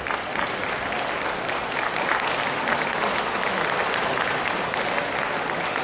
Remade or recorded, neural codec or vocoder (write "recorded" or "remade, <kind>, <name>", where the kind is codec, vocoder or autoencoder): recorded